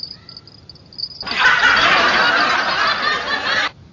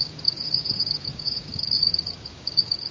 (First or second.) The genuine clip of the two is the first